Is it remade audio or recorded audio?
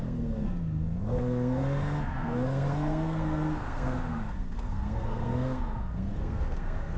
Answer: remade